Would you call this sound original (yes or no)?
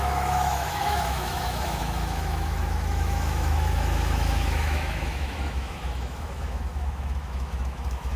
no